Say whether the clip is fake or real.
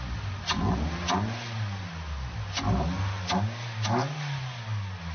real